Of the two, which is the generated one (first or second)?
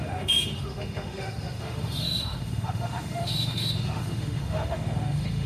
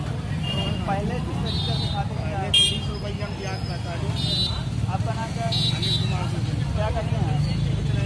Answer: first